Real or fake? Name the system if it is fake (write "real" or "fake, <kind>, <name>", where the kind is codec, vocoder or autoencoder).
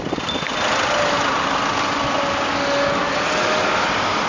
real